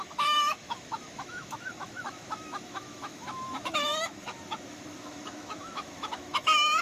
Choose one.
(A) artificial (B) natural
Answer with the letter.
A